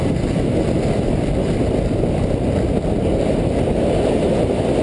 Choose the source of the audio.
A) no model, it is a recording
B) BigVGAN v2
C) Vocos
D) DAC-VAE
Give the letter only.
A